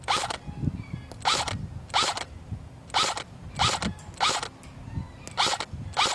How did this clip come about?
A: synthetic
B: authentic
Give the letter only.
B